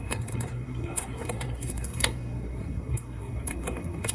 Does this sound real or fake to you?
fake